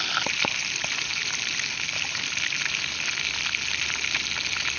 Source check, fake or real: real